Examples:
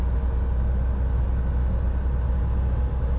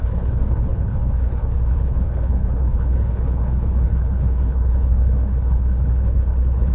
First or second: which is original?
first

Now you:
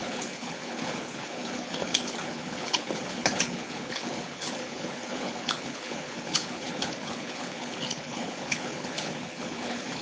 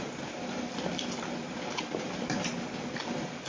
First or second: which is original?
second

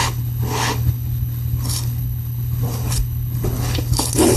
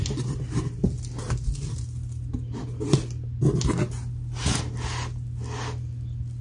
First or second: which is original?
second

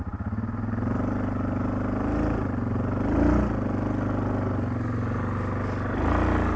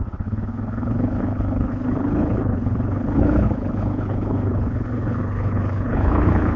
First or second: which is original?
first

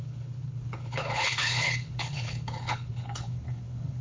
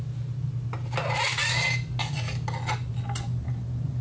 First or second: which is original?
second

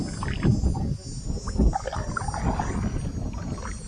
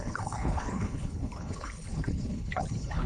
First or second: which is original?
first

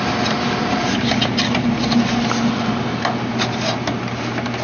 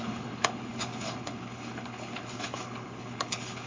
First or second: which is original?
first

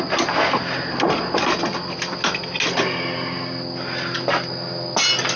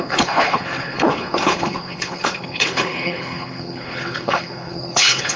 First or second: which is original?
first